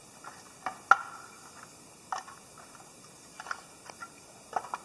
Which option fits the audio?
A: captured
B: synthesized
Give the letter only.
A